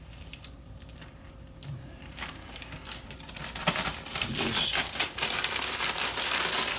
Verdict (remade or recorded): remade